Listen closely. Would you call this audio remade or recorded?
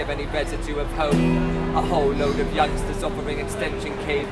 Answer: recorded